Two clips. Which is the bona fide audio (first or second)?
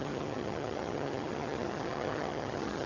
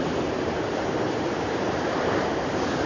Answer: second